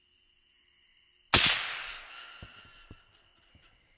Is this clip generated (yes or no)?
no